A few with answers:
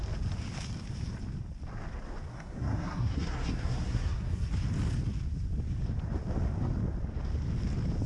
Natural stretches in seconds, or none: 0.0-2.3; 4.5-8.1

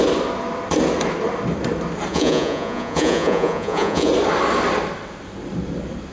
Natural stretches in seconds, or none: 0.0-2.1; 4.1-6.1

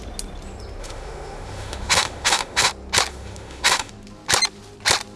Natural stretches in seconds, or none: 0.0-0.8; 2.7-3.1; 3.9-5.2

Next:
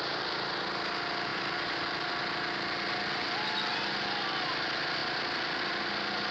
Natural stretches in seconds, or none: 0.0-6.3

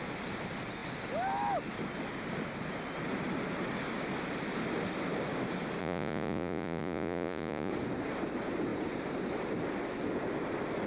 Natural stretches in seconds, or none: 0.0-5.8; 7.7-10.9

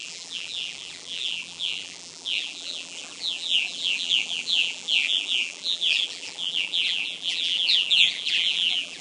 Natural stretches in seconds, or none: none

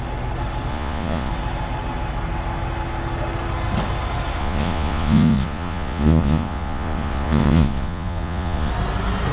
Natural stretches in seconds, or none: 0.0-0.7; 1.3-4.4; 8.7-9.3